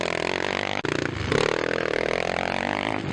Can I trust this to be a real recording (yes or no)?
yes